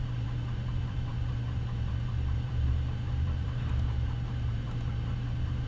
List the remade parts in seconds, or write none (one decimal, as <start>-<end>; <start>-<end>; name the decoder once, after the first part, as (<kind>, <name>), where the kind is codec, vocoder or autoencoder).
0.0-5.7 (vocoder, BigVGAN v2)